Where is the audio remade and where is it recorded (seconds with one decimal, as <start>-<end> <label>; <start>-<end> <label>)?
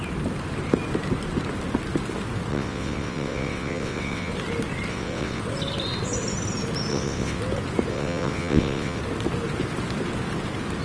0.0-2.5 recorded; 2.5-4.3 remade; 4.3-4.9 recorded; 4.9-5.4 remade; 5.4-6.9 recorded; 6.9-7.4 remade; 7.4-7.9 recorded; 7.9-9.0 remade; 9.0-10.8 recorded